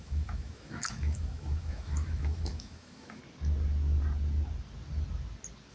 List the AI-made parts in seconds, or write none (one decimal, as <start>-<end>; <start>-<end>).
0.0-3.2